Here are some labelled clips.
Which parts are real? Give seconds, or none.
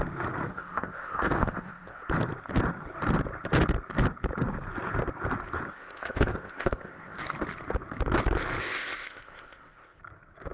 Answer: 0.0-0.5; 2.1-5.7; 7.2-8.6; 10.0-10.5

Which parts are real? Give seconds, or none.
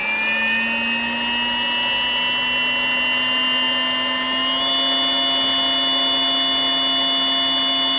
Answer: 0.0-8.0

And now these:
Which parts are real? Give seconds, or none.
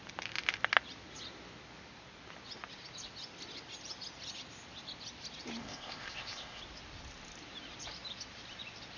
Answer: 0.0-5.6; 6.6-9.0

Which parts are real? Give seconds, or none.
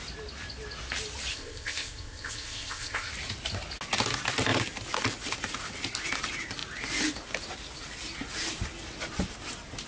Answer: 0.0-1.3; 3.1-9.9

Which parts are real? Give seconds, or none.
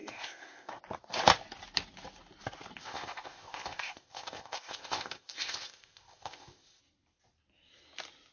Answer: 0.8-2.8; 6.8-8.3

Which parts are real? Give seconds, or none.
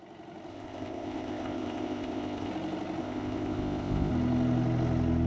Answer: 0.0-0.5; 2.5-3.0; 4.1-5.3